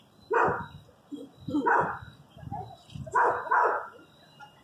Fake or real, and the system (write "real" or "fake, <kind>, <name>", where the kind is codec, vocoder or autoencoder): real